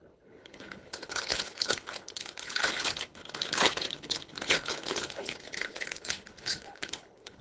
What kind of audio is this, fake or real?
fake